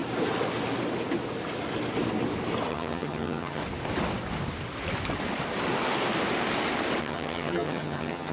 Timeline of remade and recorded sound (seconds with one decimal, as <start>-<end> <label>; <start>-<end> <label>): 0.0-2.7 recorded; 2.7-3.6 remade; 3.6-7.0 recorded; 7.0-8.3 remade